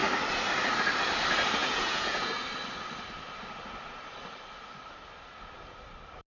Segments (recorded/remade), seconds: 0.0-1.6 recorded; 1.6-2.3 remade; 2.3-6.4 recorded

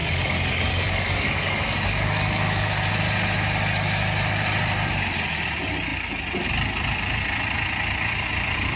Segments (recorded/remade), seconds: 0.0-2.9 remade; 2.9-8.8 recorded